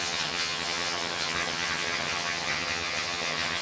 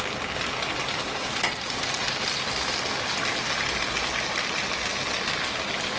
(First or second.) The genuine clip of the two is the second